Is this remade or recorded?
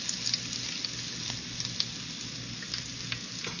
recorded